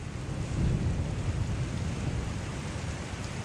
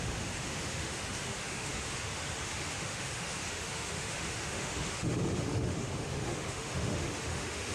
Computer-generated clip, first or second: second